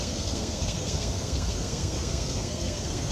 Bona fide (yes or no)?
no